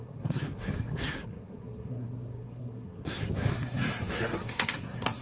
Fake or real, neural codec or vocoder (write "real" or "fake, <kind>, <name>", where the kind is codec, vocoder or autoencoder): fake, codec, SNAC